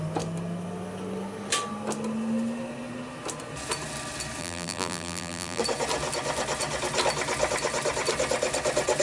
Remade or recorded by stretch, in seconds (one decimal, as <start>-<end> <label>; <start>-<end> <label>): 0.0-4.4 recorded; 4.4-5.6 remade; 5.6-9.0 recorded